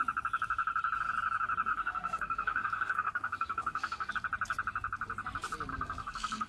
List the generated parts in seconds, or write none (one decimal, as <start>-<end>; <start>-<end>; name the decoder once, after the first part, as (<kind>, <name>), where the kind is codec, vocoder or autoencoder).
1.7-4.1 (codec, SNAC); 5.7-6.5